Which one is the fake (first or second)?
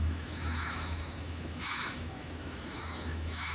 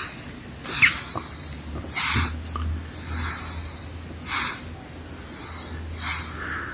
first